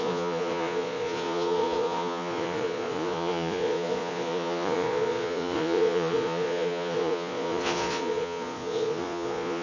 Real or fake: fake